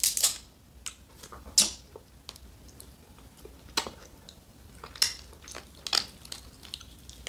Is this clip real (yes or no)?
yes